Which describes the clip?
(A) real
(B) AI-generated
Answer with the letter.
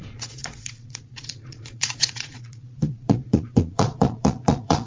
B